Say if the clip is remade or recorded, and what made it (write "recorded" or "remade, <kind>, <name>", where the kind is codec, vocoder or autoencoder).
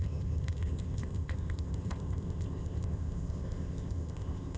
remade, codec, ZipCodec